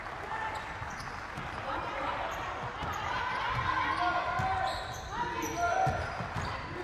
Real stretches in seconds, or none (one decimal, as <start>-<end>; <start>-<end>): 0.0-0.5; 1.3-6.8